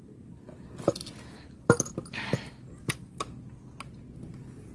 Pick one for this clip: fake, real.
real